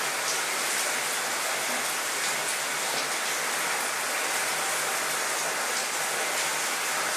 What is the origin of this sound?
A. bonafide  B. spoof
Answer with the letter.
A